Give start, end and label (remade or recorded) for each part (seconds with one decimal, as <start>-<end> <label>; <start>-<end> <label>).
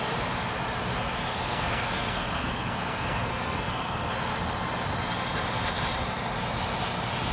0.0-1.3 recorded; 1.3-4.1 remade; 4.1-7.3 recorded